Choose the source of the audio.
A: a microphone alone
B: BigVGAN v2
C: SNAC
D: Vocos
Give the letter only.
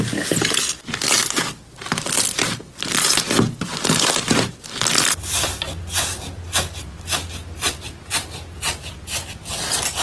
A